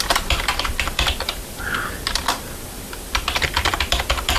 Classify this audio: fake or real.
fake